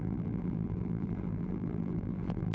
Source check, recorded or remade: remade